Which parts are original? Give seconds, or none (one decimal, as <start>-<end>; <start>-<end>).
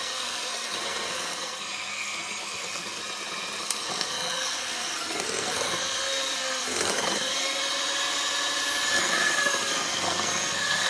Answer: 3.0-3.6; 7.6-9.0